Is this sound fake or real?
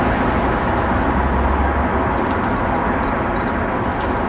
real